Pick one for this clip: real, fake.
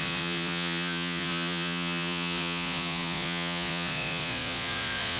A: fake